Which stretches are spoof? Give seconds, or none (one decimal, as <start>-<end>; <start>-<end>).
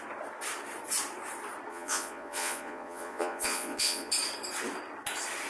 1.7-4.1